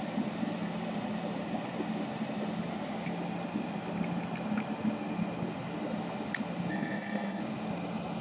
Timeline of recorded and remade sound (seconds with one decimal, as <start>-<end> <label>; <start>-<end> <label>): 0.0-6.7 recorded; 6.7-7.4 remade; 7.4-8.2 recorded